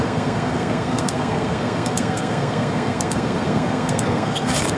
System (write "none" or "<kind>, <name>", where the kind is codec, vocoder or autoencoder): codec, SNAC